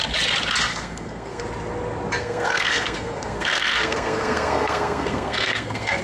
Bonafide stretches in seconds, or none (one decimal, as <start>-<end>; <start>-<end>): 0.0-0.7; 1.4-2.2